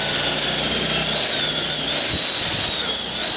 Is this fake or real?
real